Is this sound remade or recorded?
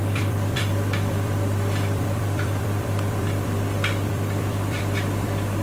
remade